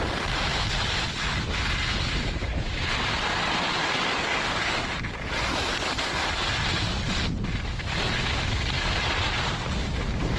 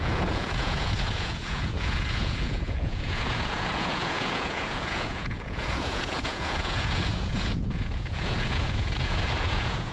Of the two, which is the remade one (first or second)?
second